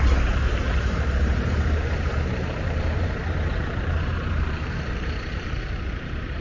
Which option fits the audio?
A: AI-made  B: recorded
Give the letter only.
A